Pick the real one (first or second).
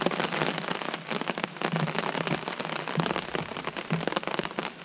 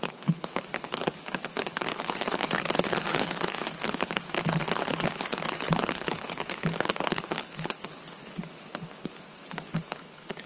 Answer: first